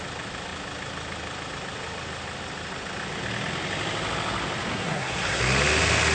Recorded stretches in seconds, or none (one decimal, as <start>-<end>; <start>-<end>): 0.0-4.7; 5.4-6.1